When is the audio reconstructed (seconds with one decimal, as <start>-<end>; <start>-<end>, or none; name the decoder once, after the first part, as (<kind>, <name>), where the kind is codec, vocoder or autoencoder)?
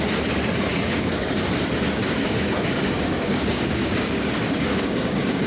0.7-1.5 (codec, DAC); 2.0-5.5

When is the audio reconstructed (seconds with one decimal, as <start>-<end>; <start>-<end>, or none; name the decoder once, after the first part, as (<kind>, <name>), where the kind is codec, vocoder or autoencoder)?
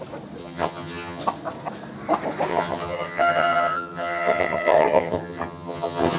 0.4-1.2 (vocoder, HiFi-GAN); 2.5-6.2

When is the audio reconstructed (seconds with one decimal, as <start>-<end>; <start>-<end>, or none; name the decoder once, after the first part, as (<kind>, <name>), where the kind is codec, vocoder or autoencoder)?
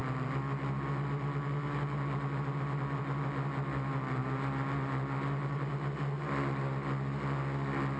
none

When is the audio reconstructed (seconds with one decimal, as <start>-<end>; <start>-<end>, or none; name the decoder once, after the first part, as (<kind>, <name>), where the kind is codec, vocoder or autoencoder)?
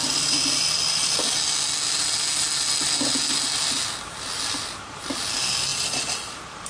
none